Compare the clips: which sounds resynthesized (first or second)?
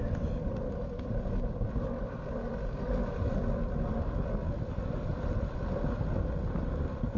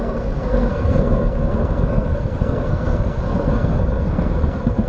second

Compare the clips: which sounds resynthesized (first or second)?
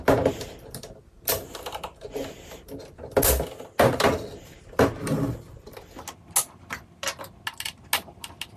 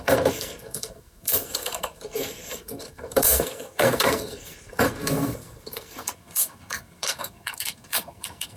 second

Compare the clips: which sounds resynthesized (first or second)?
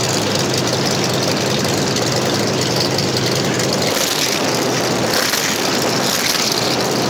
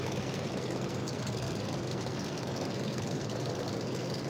second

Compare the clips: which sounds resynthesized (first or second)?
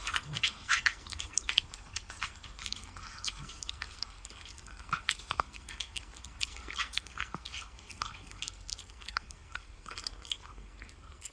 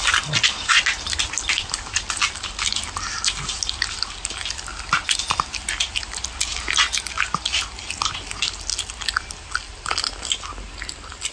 first